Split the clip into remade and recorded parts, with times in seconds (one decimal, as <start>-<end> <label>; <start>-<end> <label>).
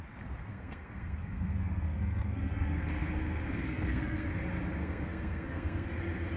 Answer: 0.0-0.5 recorded; 0.5-4.3 remade; 4.3-4.8 recorded; 4.8-5.9 remade; 5.9-6.4 recorded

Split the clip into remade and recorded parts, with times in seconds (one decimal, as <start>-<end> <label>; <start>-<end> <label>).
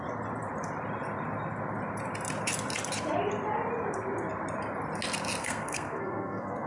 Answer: 0.0-5.4 recorded; 5.4-6.7 remade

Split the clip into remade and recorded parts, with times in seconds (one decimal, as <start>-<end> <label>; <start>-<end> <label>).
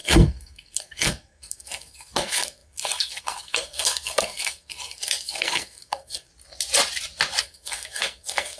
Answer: 0.0-6.3 remade; 6.3-7.4 recorded; 7.4-8.6 remade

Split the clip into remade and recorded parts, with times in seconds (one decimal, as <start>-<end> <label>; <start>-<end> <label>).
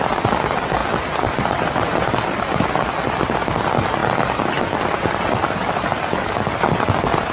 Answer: 0.0-7.3 recorded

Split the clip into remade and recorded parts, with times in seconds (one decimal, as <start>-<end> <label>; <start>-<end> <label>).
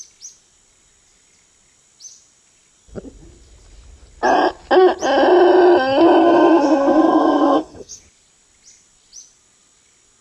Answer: 0.0-6.2 recorded; 6.2-8.0 remade; 8.0-10.2 recorded